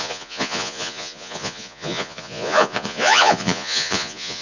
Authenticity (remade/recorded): remade